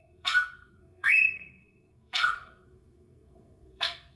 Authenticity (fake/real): fake